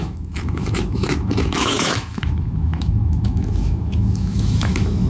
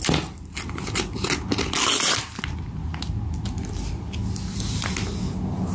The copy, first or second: first